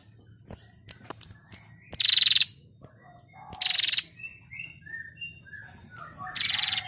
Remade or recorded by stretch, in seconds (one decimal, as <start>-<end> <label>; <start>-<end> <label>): 0.0-6.9 recorded